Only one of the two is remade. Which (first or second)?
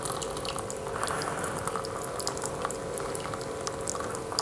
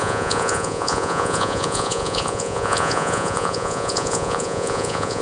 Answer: second